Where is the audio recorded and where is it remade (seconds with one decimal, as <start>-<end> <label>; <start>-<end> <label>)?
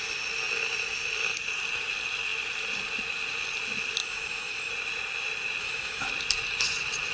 0.0-4.0 recorded; 4.0-4.7 remade; 4.7-5.6 recorded; 5.6-6.1 remade; 6.1-7.1 recorded